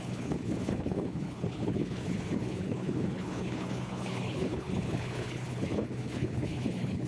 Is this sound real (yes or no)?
no